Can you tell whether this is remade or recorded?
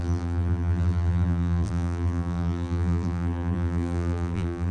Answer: remade